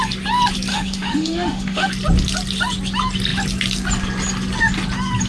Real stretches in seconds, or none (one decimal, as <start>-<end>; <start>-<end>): 0.0-0.7; 1.9-5.3